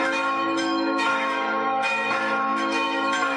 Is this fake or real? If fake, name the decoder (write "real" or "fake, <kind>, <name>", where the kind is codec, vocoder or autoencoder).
fake, autoencoder, DAC-VAE